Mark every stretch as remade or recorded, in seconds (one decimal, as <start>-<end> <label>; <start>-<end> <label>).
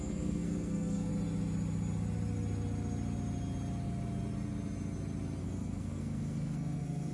0.0-1.1 remade; 1.1-5.4 recorded; 5.4-7.1 remade